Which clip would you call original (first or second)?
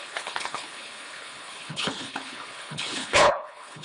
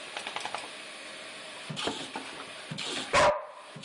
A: second